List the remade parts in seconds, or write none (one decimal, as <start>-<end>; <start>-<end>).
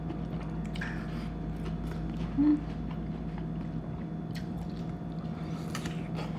none